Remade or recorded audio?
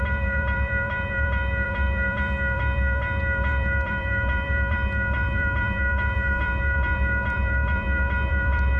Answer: remade